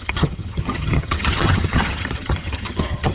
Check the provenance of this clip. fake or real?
fake